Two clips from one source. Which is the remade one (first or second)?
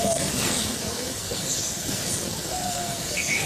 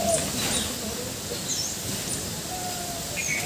first